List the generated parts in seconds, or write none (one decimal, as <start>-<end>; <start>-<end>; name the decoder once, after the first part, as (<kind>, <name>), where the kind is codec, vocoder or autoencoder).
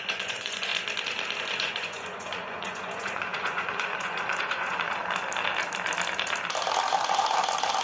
0.0-0.7 (vocoder, Vocos); 1.4-5.0